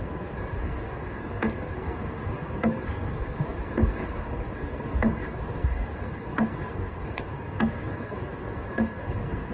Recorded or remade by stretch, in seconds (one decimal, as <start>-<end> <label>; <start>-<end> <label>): 0.0-9.5 remade